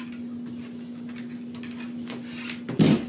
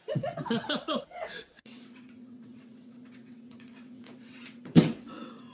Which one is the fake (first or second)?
second